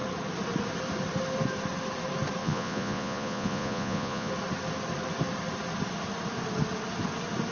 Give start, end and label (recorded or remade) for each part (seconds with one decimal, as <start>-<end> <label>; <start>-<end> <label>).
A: 0.0-2.4 recorded; 2.4-4.3 remade; 4.3-7.5 recorded